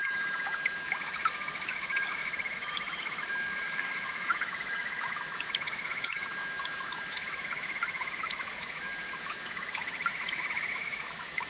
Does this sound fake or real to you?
fake